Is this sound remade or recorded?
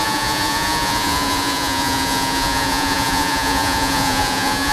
remade